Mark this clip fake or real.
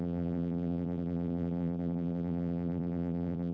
fake